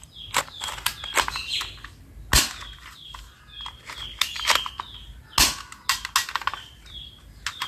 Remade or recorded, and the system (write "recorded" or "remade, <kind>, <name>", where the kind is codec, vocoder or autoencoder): recorded